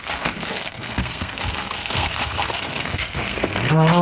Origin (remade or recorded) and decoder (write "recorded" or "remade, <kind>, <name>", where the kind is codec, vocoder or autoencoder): remade, codec, SNAC